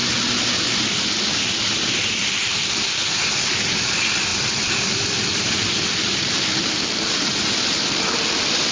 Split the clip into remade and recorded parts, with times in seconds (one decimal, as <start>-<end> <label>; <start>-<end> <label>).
0.0-0.8 recorded; 0.8-8.7 remade